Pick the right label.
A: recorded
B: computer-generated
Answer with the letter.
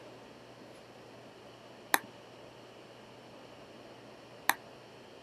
A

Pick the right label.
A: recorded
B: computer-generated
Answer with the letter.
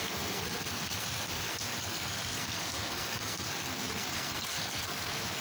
B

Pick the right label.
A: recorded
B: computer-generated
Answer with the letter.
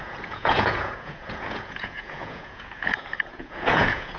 B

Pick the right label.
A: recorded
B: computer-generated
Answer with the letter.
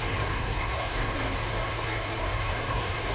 B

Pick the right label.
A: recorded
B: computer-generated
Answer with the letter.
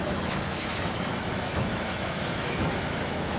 B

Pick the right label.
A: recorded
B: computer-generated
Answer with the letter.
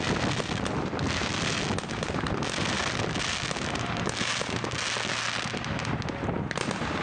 A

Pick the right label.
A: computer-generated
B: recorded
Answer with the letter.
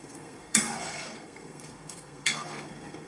A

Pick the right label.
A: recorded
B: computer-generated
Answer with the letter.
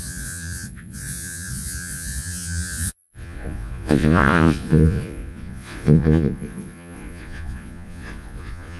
B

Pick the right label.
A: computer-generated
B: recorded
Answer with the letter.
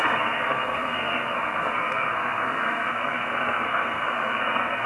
A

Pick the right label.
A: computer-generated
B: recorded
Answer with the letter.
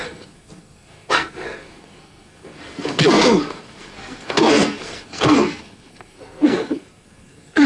A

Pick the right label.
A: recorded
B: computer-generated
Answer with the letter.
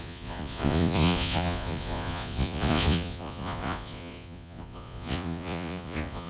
B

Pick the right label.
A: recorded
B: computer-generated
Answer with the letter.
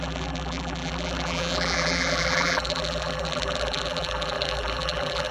B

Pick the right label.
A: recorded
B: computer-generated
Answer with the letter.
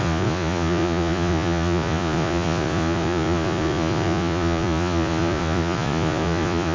B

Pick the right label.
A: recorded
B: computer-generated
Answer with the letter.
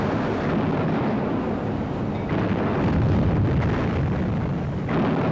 A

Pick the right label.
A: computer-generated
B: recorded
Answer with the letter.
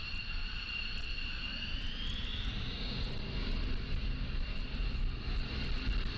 B